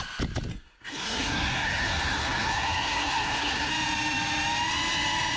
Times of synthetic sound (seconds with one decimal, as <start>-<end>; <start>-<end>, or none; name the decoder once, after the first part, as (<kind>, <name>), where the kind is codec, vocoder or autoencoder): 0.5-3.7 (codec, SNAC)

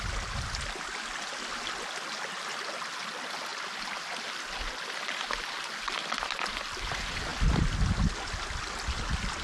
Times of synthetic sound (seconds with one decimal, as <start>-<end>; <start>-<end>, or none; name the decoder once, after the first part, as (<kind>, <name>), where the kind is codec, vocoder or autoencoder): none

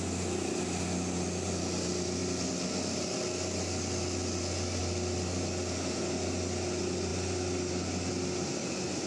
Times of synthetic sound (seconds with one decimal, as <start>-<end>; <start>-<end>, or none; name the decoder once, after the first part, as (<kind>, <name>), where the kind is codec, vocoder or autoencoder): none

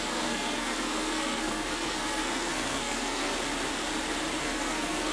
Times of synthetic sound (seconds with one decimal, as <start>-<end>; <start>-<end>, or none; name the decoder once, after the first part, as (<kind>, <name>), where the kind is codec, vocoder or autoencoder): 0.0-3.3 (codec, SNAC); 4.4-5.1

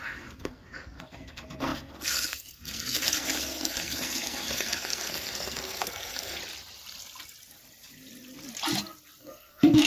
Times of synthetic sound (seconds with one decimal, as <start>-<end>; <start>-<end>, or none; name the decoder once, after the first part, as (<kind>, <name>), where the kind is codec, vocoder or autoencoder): 0.0-6.4 (codec, SNAC); 9.2-9.9

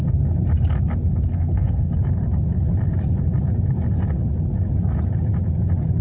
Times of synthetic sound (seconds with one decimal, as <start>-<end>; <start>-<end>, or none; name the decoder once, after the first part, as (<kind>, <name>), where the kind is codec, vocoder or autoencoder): 1.3-1.9 (codec, SNAC)

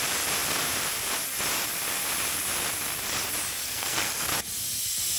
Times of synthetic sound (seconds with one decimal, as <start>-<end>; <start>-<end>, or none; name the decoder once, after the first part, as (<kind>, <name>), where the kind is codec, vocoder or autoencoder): 3.6-4.3 (codec, SNAC)

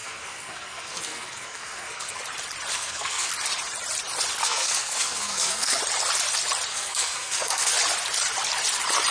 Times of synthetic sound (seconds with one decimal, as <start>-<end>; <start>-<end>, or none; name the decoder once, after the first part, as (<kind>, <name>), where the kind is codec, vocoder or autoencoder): 0.0-2.2 (codec, SNAC); 2.7-3.3; 4.4-5.8; 6.7-7.7